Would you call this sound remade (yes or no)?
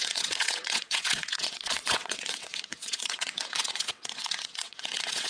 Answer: yes